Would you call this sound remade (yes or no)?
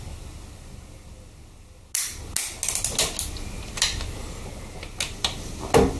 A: no